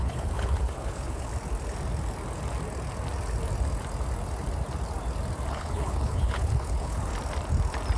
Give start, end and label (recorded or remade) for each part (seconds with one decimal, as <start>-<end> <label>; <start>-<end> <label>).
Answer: 0.0-1.3 remade; 1.3-5.5 recorded; 5.5-7.1 remade; 7.1-8.0 recorded